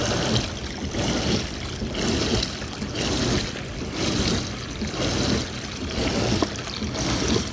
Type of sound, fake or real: real